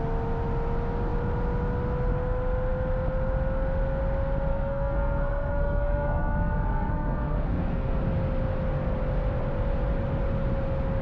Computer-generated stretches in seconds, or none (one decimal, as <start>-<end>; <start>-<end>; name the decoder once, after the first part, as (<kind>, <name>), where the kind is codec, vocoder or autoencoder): 4.5-8.0 (codec, SNAC)